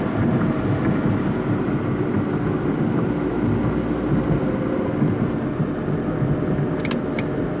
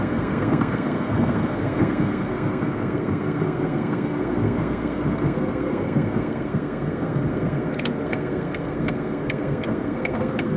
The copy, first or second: second